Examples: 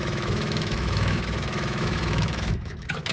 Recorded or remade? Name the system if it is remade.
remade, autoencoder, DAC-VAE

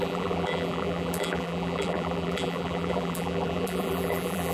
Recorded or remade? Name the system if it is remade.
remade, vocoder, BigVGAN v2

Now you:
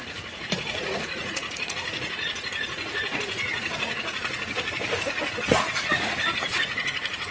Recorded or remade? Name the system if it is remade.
remade, vocoder, Vocos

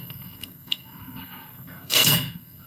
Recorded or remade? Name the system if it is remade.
remade, codec, SNAC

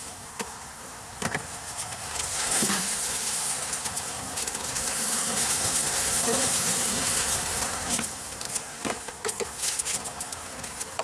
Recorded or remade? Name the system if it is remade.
remade, codec, SNAC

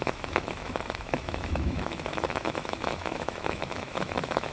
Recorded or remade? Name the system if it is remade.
remade, autoencoder, DAC-VAE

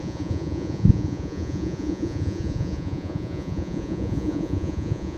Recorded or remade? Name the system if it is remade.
remade, vocoder, Vocos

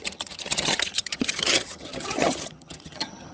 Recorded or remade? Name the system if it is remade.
remade, vocoder, HiFi-GAN